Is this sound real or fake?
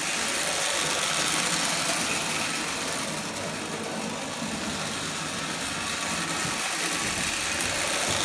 real